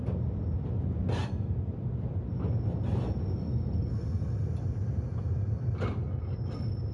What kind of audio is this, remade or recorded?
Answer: recorded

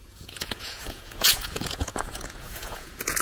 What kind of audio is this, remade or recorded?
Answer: remade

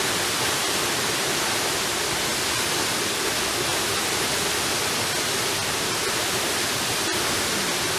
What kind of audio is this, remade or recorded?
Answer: recorded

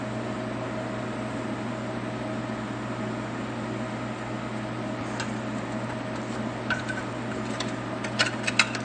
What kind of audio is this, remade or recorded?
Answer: recorded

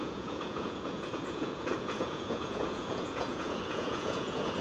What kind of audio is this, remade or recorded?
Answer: remade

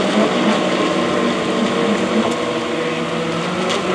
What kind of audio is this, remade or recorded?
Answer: recorded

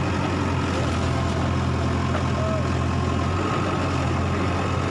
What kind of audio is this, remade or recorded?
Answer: recorded